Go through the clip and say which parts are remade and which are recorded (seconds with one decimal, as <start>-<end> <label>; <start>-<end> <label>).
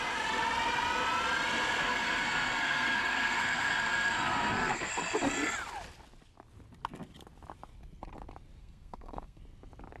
0.0-1.8 recorded; 1.8-4.9 remade; 4.9-8.6 recorded; 8.6-9.4 remade; 9.4-10.0 recorded